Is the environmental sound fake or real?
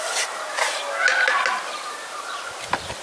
real